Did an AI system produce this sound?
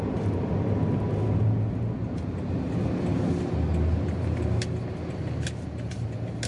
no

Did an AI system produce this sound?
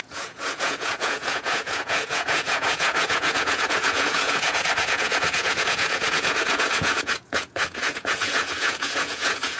yes